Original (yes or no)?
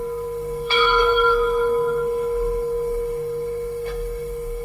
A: no